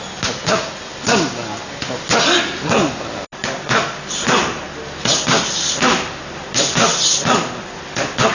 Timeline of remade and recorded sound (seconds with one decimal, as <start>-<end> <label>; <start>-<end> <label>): 0.0-8.3 recorded

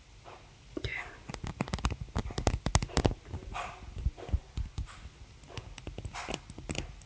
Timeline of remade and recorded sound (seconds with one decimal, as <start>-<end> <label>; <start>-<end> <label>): 0.0-7.1 recorded

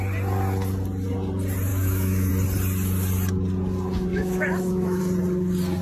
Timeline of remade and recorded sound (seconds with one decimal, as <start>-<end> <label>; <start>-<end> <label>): 0.0-1.7 recorded; 1.7-2.3 remade; 2.3-4.1 recorded; 4.1-5.0 remade; 5.0-5.8 recorded

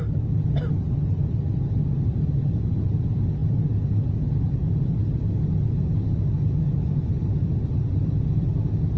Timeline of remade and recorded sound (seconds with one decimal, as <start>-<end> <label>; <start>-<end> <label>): 0.0-9.0 recorded

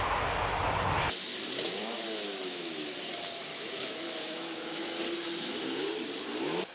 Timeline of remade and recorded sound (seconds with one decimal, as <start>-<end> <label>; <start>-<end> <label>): 0.0-1.8 recorded; 1.8-3.0 remade; 3.0-3.5 recorded; 3.5-5.0 remade; 5.0-6.7 recorded

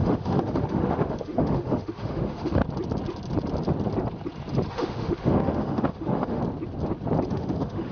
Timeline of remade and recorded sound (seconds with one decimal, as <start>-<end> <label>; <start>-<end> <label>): 0.0-2.6 remade; 2.6-4.7 recorded; 4.7-6.4 remade; 6.4-7.3 recorded; 7.3-7.9 remade

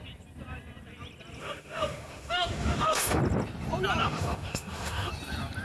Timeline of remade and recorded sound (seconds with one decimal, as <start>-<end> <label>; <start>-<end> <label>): 0.0-1.4 recorded; 1.4-3.2 remade; 3.2-4.0 recorded; 4.0-5.1 remade; 5.1-5.6 recorded